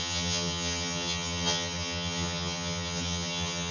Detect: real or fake fake